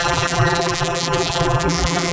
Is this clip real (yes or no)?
no